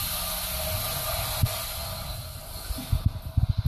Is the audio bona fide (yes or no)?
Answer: yes